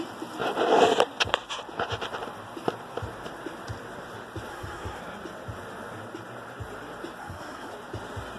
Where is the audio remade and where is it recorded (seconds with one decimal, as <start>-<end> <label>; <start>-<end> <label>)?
0.0-4.5 recorded; 4.5-5.0 remade; 5.0-7.2 recorded; 7.2-7.7 remade; 7.7-8.4 recorded